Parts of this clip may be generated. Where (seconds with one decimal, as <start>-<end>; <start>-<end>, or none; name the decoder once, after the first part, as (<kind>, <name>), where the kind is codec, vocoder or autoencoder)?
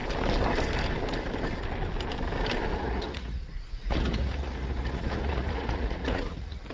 2.7-6.7 (vocoder, Vocos)